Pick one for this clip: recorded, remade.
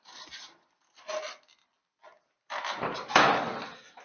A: recorded